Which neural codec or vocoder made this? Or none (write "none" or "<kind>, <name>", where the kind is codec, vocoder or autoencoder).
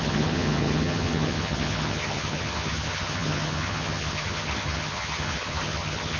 vocoder, HiFi-GAN